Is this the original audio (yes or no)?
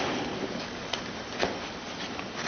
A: yes